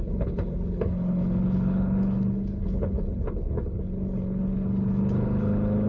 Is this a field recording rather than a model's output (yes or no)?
no